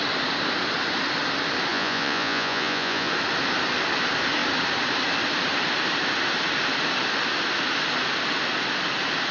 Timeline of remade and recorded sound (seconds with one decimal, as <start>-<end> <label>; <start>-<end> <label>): 0.0-1.7 recorded; 1.7-3.1 remade; 3.1-9.3 recorded